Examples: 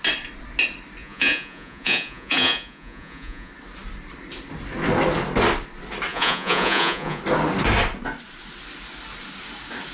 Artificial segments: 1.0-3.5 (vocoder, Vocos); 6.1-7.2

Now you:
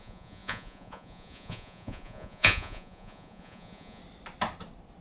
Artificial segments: 0.0-4.0 (vocoder, Vocos)

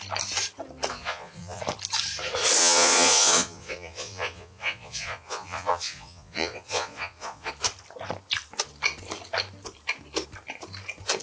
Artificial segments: 0.9-1.6 (vocoder, Vocos); 2.6-7.5